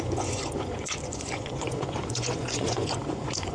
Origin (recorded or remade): remade